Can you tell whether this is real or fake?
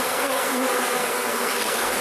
fake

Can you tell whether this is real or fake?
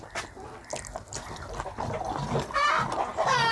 real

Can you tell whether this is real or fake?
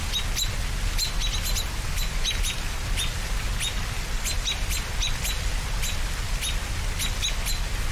real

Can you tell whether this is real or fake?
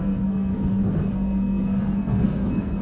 fake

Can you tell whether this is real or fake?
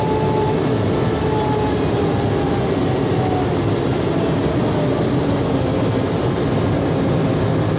real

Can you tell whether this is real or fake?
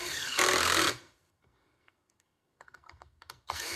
fake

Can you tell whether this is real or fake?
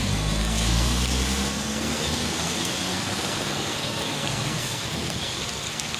fake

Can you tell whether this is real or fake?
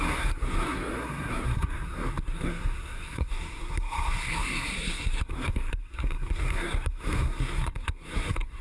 fake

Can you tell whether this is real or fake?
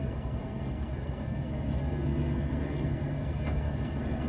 fake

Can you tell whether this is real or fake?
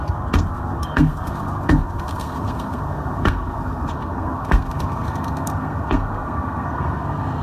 fake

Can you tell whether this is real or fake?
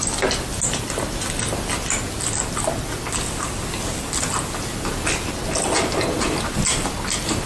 real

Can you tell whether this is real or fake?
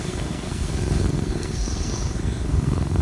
fake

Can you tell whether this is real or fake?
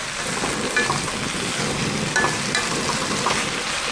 real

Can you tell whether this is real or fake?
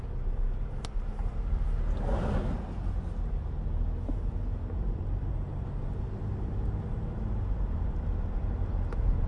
real